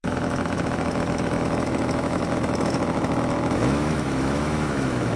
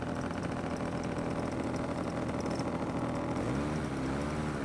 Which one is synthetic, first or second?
first